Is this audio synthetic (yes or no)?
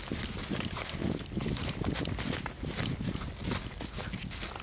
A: no